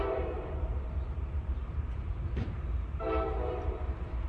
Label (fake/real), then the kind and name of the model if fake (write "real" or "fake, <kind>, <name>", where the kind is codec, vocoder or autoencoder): fake, vocoder, BigVGAN v2